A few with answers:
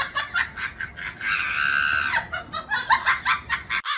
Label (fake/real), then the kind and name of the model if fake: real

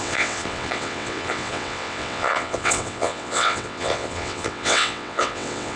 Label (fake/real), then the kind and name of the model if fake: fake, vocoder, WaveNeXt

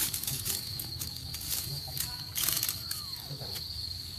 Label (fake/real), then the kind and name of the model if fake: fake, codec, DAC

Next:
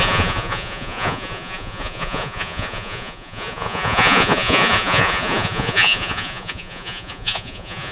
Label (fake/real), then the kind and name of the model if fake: fake, vocoder, Vocos